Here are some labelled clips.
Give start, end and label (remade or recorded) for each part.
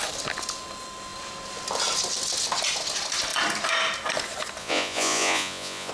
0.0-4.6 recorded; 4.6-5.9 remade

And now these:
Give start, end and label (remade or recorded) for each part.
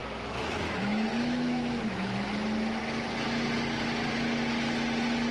0.0-2.8 remade; 2.8-5.3 recorded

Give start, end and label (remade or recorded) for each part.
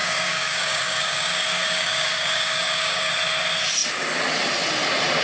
0.0-3.1 remade; 3.1-5.2 recorded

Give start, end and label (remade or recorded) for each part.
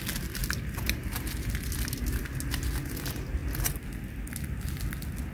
0.0-5.3 recorded